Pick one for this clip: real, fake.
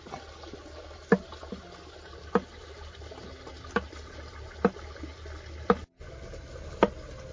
real